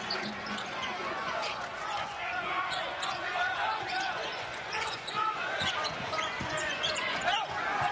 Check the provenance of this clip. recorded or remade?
remade